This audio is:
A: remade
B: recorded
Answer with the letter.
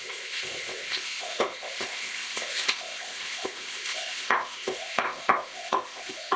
A